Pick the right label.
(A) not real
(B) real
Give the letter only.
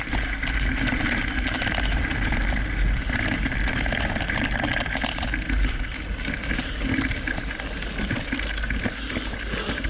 B